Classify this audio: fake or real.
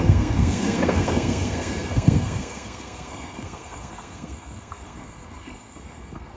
fake